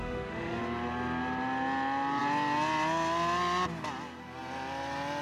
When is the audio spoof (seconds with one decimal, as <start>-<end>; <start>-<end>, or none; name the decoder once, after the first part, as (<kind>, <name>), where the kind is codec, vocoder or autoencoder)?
0.0-0.6 (autoencoder, DAC-VAE)